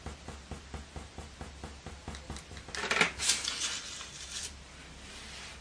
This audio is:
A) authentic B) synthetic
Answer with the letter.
A